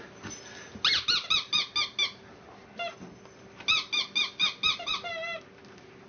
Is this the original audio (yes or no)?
yes